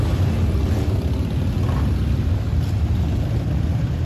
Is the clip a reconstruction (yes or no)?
no